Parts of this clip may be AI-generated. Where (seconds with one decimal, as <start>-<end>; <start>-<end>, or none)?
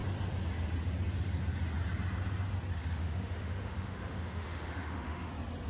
2.8-5.3